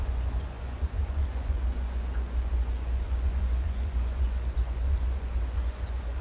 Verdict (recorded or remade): remade